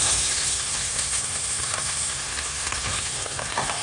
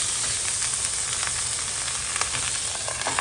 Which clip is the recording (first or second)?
second